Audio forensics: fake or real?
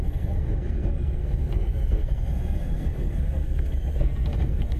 fake